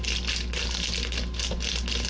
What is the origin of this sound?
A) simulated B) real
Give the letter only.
B